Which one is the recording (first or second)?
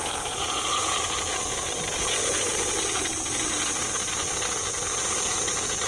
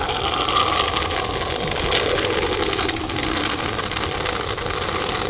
second